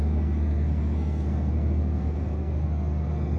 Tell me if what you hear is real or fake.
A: fake